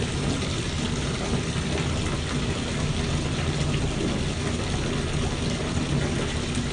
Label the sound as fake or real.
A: real